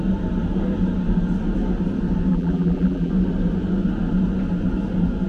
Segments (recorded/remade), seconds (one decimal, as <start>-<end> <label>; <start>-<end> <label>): 0.0-2.3 recorded; 2.3-3.1 remade; 3.1-5.3 recorded